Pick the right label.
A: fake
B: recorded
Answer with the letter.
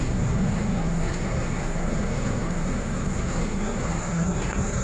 A